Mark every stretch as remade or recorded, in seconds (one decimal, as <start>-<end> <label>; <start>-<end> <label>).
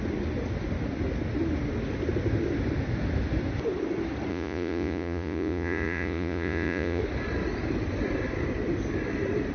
0.0-4.3 recorded; 4.3-7.0 remade; 7.0-9.5 recorded